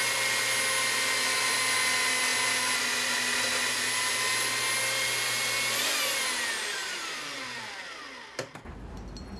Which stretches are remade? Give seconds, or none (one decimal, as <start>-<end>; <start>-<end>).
6.8-7.6